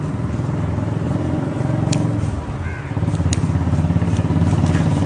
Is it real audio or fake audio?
real